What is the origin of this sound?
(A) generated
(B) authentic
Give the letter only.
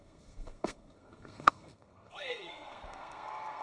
A